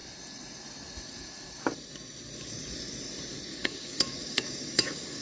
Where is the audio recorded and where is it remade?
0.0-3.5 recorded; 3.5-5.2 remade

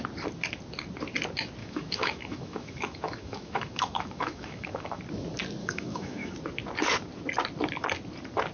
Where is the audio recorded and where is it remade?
0.0-1.6 recorded; 1.6-5.0 remade; 5.0-5.6 recorded; 5.6-6.3 remade; 6.3-8.5 recorded

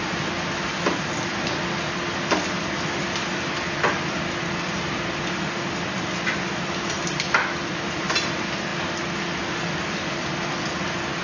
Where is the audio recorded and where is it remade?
0.0-11.2 recorded

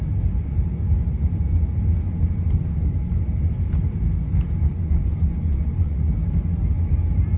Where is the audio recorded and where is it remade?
0.0-4.7 recorded; 4.7-6.1 remade; 6.1-7.4 recorded

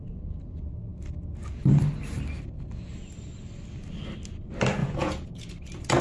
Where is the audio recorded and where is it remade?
0.0-4.8 recorded; 4.8-5.5 remade; 5.5-6.0 recorded

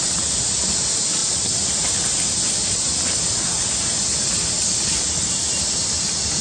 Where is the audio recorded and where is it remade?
0.0-6.4 recorded

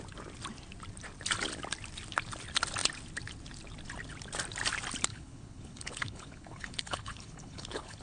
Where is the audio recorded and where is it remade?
0.0-5.1 recorded; 5.1-8.0 remade